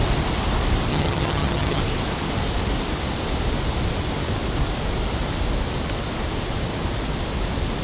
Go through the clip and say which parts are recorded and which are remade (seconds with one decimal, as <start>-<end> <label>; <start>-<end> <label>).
0.0-0.9 recorded; 0.9-1.8 remade; 1.8-7.8 recorded